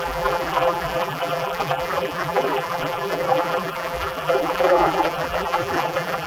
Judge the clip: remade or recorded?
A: remade